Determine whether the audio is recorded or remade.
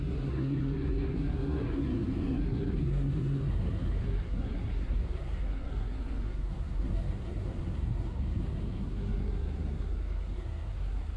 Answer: remade